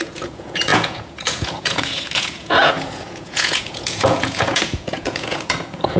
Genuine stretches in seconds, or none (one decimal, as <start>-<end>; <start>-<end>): none